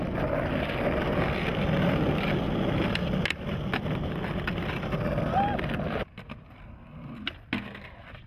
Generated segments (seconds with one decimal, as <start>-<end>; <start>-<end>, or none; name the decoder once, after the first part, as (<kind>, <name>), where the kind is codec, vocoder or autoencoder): none